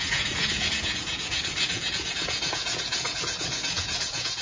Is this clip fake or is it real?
fake